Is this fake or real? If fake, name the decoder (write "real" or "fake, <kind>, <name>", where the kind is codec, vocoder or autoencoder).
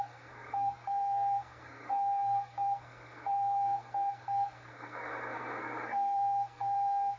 fake, codec, SNAC